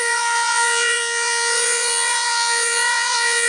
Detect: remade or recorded remade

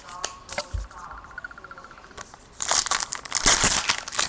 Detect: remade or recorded recorded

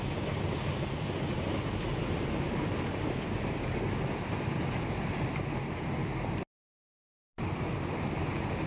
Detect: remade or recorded recorded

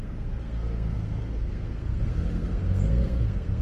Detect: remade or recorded remade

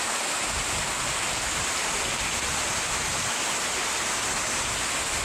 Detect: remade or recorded recorded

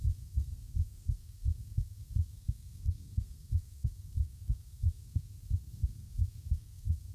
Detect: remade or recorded remade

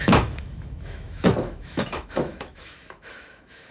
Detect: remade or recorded remade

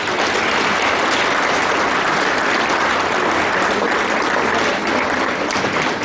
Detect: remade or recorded recorded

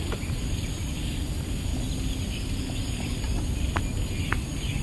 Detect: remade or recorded recorded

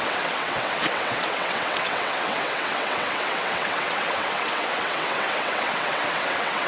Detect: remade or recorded remade